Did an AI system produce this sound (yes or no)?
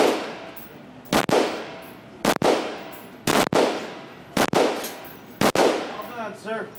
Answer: no